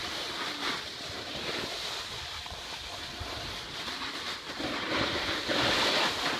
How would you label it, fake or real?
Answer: real